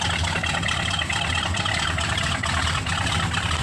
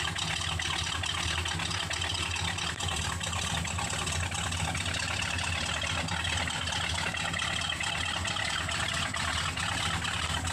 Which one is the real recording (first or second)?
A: second